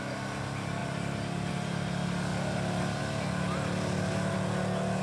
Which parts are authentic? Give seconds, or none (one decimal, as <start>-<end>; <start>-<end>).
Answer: 0.0-5.0